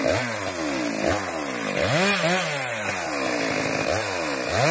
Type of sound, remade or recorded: recorded